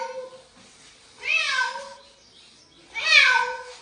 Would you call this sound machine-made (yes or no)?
no